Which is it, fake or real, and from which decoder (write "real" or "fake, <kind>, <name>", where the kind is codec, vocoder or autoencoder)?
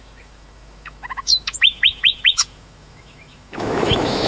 fake, autoencoder, DAC-VAE